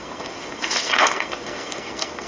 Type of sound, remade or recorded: remade